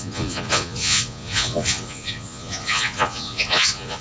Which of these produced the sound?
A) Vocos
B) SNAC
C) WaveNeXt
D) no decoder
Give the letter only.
A